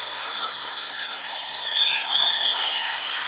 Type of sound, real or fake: fake